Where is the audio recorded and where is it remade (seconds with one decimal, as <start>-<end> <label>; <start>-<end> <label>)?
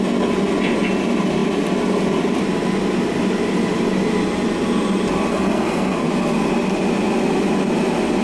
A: 0.0-5.3 recorded; 5.3-6.1 remade; 6.1-8.2 recorded